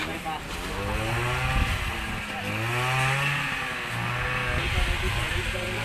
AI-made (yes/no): no